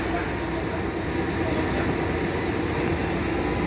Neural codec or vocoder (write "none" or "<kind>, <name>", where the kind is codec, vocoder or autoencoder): none